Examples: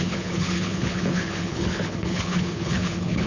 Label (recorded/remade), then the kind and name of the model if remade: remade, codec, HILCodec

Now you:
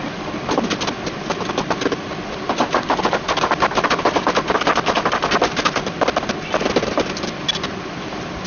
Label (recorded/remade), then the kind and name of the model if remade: recorded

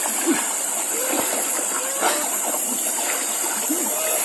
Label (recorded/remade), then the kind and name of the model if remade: remade, vocoder, BigVGAN v2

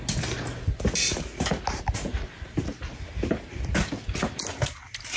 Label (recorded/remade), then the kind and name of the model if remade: recorded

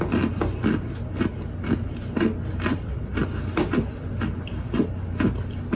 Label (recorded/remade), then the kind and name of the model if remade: recorded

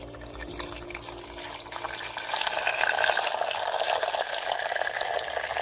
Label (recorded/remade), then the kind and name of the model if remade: recorded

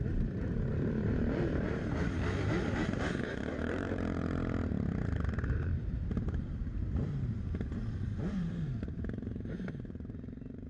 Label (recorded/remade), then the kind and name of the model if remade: remade, vocoder, BigVGAN v2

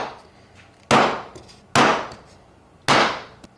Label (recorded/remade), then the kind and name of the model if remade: recorded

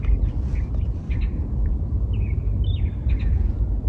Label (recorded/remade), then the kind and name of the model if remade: recorded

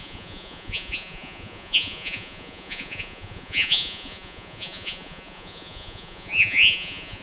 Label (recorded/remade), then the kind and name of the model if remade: remade, vocoder, Vocos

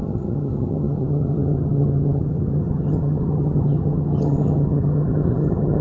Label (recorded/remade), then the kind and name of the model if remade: remade, vocoder, HiFi-GAN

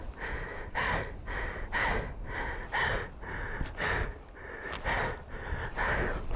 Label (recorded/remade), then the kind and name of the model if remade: recorded